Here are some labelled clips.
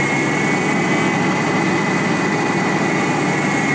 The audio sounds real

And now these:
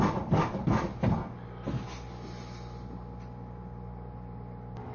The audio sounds real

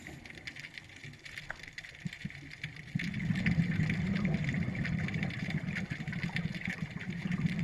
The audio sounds real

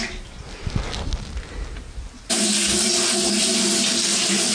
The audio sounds real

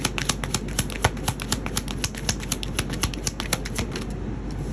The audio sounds real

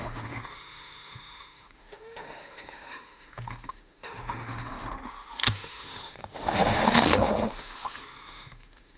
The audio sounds fake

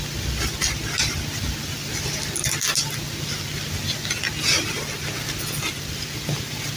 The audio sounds real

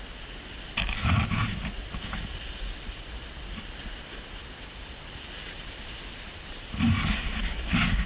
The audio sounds real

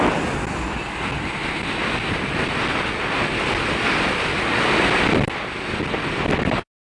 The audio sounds real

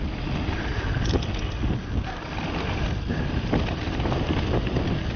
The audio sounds real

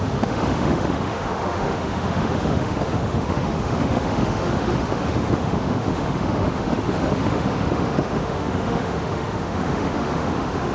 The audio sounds fake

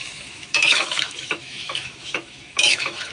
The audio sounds fake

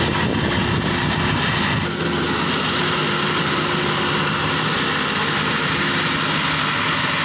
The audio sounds real